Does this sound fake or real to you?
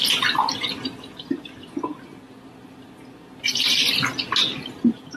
real